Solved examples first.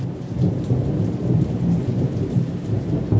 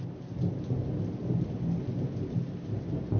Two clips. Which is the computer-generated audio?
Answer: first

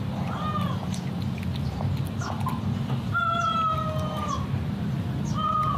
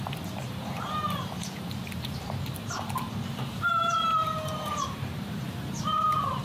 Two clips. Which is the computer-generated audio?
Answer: second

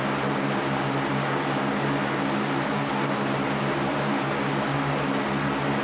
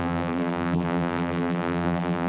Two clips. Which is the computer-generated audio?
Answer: second